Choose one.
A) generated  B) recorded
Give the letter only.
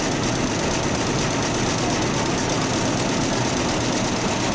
B